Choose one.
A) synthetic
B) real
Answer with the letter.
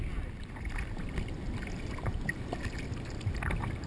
B